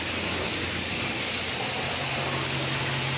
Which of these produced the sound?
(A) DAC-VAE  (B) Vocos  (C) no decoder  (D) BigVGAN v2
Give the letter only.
C